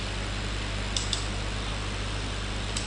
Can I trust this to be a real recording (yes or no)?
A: yes